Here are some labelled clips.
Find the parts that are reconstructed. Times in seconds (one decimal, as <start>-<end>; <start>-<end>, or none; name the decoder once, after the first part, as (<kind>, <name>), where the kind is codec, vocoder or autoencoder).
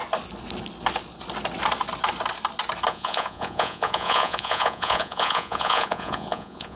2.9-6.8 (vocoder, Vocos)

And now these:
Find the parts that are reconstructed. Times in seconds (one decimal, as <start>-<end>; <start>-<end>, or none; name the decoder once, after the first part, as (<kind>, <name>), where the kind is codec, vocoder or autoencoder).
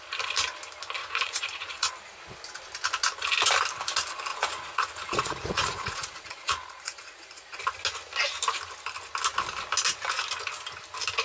1.0-1.9 (vocoder, Vocos); 4.3-7.6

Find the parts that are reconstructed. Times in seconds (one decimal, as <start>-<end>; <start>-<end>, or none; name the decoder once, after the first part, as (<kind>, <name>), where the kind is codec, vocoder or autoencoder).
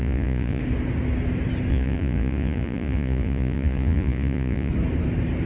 0.0-0.6 (vocoder, Vocos); 1.7-4.7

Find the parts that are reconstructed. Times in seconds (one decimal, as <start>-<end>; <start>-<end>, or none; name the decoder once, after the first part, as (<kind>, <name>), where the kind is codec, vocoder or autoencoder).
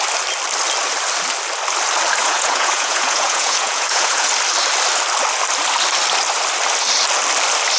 2.2-4.3 (vocoder, Vocos)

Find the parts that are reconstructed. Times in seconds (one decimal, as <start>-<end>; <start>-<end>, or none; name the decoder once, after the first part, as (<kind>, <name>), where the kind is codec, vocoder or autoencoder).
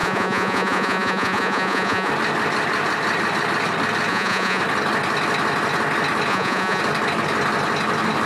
0.0-2.1 (vocoder, Vocos); 4.1-4.6; 6.3-6.8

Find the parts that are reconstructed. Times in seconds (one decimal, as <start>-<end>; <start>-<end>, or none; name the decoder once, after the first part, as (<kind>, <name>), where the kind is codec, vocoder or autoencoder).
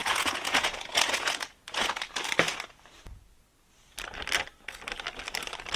0.0-2.0 (vocoder, Vocos)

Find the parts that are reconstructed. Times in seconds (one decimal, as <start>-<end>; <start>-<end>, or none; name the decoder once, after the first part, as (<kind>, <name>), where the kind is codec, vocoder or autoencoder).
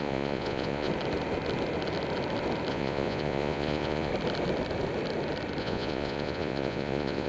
0.0-0.9 (vocoder, Vocos); 2.7-4.1; 5.6-7.3